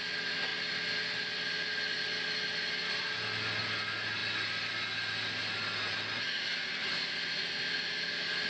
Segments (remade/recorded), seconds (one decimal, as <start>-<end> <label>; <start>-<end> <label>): 0.0-8.5 recorded